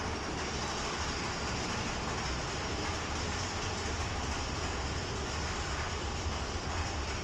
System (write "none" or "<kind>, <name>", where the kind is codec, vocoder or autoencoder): none